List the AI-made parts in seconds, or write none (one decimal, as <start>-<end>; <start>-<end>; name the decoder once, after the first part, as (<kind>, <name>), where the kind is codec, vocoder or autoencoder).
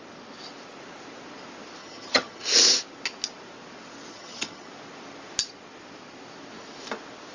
1.8-2.4 (vocoder, HiFi-GAN); 4.1-4.7